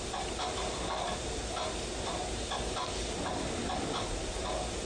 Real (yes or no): yes